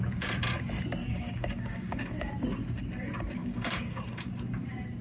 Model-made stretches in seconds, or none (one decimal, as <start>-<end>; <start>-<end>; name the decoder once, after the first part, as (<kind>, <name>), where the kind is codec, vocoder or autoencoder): 1.0-2.3 (codec, DAC); 3.4-4.3